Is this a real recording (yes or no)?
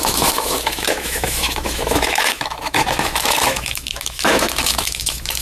no